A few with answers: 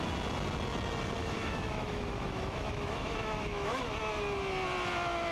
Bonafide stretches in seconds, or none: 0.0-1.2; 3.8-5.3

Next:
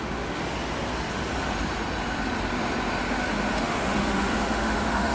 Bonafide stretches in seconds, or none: 0.4-3.5

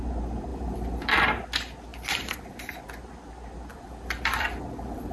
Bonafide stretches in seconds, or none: 0.0-0.5; 1.1-1.9; 2.5-3.7